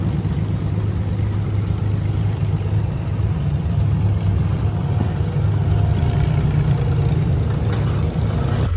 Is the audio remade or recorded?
recorded